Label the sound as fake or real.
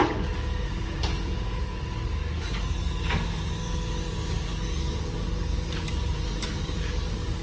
fake